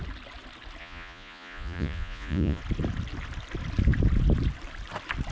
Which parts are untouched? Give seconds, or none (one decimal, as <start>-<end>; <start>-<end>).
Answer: 0.0-0.8; 2.6-5.3